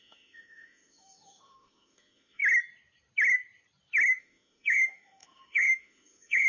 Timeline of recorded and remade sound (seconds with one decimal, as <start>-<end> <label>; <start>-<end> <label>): 0.0-2.4 remade; 2.4-4.2 recorded; 4.2-6.5 remade